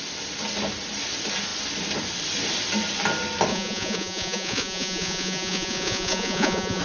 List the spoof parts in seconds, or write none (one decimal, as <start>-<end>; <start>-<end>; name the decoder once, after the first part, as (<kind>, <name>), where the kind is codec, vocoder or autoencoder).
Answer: 3.5-6.8 (vocoder, Vocos)

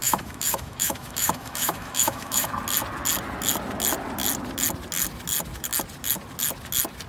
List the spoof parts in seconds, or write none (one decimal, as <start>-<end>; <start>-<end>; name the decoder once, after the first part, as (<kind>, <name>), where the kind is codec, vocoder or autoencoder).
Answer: 0.0-2.5 (autoencoder, DAC-VAE)

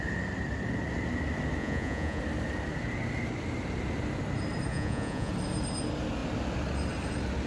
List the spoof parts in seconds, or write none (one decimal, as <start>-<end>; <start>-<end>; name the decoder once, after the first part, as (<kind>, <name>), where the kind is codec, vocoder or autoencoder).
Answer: 1.6-2.2 (vocoder, Vocos); 4.7-5.3

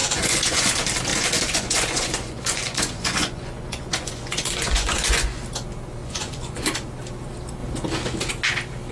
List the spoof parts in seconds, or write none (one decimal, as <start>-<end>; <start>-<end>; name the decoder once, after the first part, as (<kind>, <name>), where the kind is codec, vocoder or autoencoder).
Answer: 0.0-0.7 (vocoder, Vocos); 1.1-5.4; 6.0-6.7

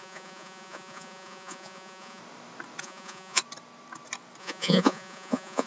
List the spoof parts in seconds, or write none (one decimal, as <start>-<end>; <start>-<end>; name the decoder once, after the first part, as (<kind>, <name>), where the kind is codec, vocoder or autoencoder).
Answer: 0.0-2.2 (vocoder, Vocos); 2.8-3.4; 4.4-5.7

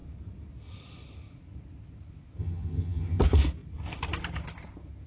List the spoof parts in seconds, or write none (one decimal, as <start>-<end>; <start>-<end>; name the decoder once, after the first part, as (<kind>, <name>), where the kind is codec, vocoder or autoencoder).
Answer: 2.4-3.2 (vocoder, HiFi-GAN)

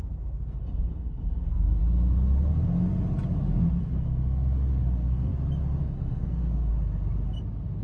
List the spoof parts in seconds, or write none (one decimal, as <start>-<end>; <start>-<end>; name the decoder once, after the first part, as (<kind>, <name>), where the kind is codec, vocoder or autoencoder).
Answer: 0.0-1.8 (codec, SNAC); 3.8-5.3; 5.8-6.7

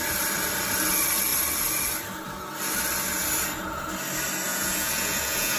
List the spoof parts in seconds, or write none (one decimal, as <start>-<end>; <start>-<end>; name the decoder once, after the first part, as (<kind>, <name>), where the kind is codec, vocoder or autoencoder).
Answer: 4.5-5.6 (vocoder, Vocos)